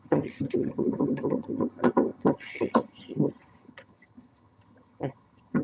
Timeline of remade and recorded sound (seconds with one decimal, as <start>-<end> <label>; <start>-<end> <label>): 0.0-5.6 remade